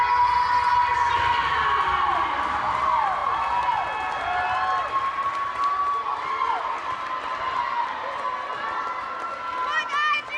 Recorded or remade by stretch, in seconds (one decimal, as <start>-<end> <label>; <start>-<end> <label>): 0.0-10.4 recorded